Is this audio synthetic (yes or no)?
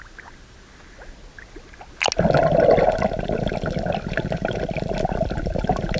no